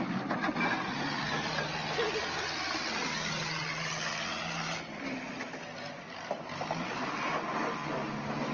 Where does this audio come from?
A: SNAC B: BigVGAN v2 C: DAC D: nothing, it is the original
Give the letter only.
D